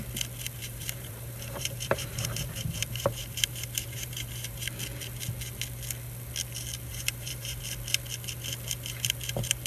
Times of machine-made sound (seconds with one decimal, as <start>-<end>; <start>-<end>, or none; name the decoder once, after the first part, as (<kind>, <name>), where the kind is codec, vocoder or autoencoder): 0.6-4.8 (vocoder, BigVGAN v2); 6.9-7.6